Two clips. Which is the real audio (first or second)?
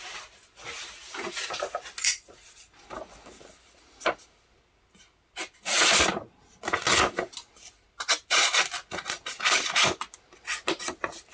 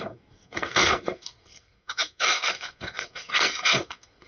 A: first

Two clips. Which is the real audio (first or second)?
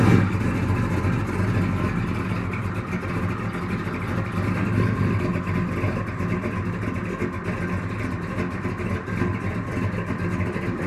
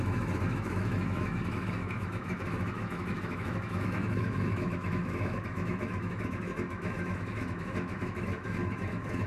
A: first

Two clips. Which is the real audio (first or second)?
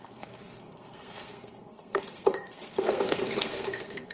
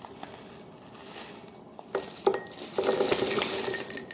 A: second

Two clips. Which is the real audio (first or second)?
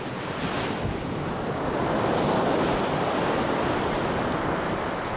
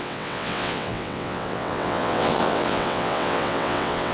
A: first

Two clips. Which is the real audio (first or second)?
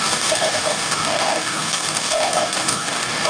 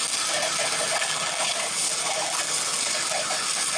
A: second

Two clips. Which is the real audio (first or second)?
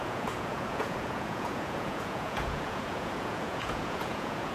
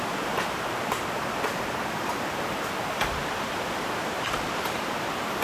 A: second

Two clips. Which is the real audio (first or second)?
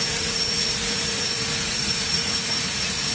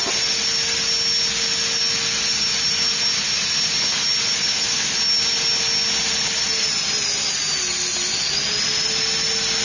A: second